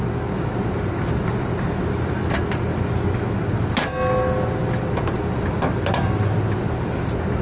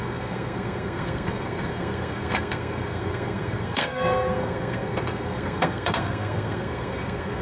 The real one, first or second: first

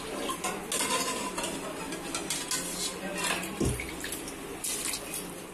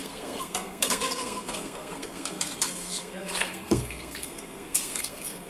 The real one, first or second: first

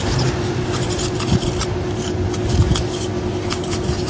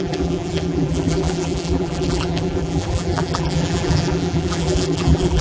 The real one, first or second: first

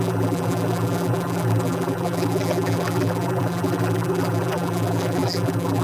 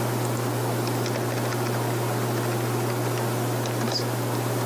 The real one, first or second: second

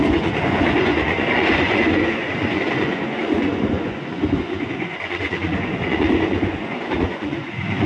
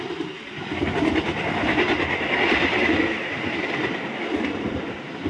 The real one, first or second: second